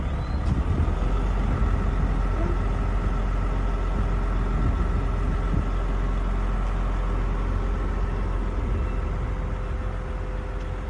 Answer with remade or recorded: recorded